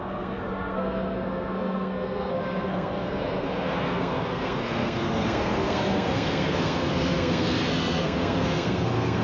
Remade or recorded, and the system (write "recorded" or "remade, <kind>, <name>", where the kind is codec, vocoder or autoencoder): remade, codec, SNAC